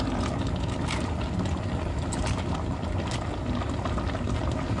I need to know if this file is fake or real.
real